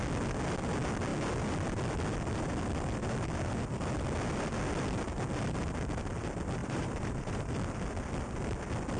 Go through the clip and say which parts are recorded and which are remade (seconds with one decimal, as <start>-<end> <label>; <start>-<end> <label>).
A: 0.0-6.6 recorded; 6.6-7.5 remade; 7.5-9.0 recorded